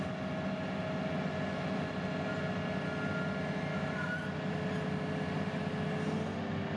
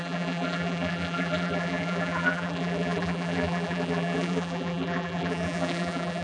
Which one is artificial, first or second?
second